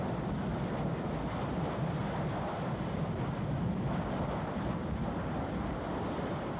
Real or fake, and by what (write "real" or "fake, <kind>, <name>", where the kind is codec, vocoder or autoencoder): real